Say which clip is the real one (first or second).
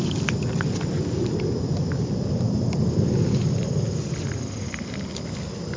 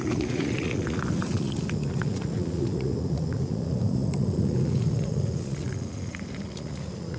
first